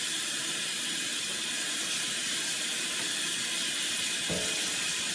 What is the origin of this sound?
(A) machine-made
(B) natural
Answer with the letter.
B